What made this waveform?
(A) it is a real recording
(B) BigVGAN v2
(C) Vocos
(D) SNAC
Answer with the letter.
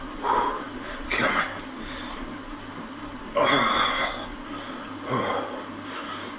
A